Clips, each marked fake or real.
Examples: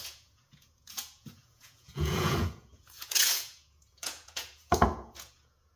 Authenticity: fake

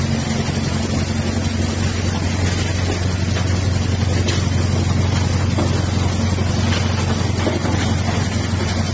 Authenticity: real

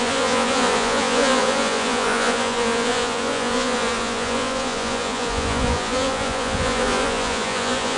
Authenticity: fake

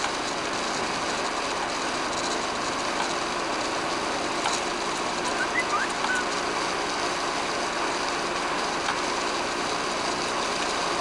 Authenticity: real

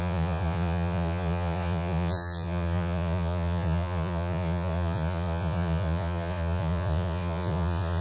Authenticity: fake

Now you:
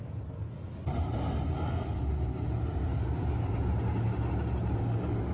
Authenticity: real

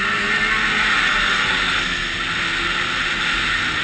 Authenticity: real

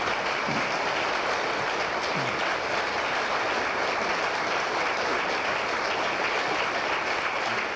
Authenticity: real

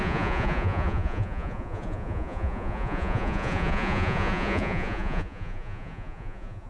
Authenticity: fake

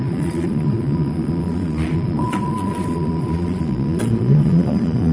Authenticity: fake